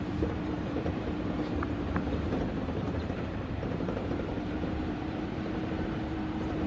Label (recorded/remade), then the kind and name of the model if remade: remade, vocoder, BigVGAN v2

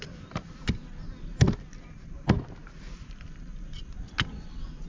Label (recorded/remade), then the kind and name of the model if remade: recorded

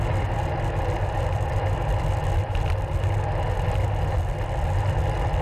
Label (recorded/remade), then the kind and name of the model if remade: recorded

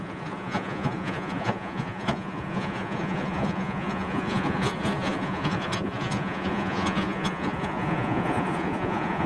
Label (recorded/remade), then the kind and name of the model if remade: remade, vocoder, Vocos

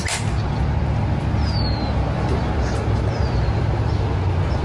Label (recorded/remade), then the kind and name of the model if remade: recorded